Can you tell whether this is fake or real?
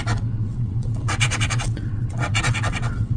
fake